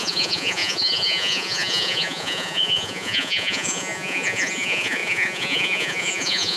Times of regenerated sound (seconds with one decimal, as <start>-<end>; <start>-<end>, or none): 0.0-6.6